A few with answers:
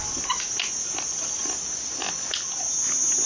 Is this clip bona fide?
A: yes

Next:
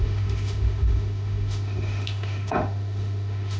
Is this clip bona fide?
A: no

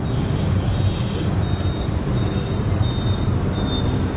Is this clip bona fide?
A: yes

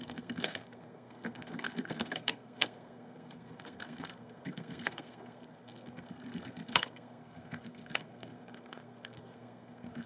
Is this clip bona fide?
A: no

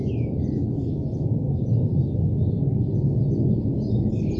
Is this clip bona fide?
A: yes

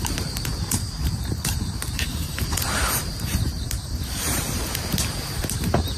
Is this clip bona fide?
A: no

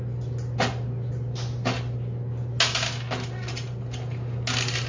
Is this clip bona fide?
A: yes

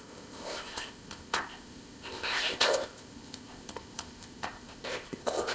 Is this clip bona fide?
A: no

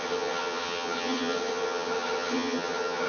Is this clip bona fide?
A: no